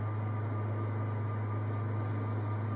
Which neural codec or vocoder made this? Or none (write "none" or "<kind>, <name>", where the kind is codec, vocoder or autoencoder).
none